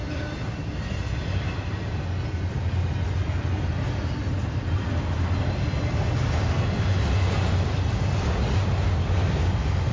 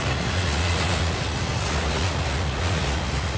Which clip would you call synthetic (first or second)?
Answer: second